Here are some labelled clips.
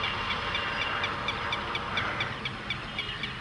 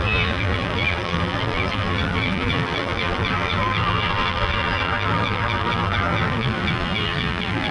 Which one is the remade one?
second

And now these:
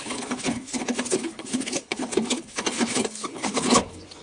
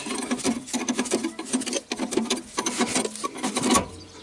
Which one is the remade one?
first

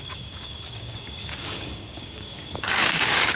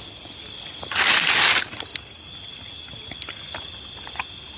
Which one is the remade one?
first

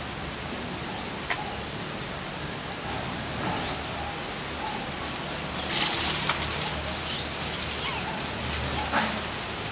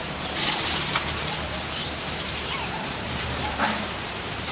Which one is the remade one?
second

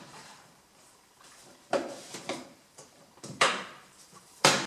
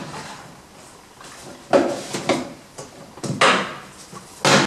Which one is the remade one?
first